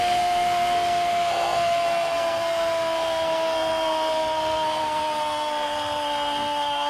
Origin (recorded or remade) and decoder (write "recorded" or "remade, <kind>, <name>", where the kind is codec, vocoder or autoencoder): remade, codec, SNAC